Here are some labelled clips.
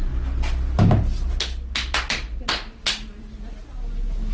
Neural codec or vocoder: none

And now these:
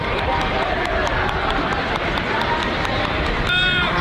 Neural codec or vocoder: vocoder, BigVGAN v2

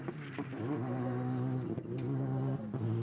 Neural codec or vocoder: none